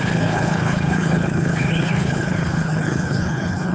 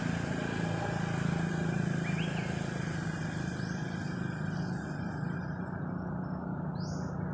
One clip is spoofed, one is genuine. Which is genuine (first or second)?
second